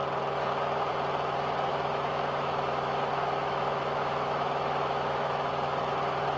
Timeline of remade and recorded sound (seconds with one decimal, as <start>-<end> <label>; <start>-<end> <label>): 0.0-1.7 recorded; 1.7-5.5 remade; 5.5-6.4 recorded